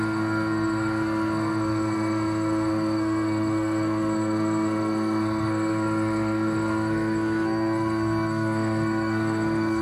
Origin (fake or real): fake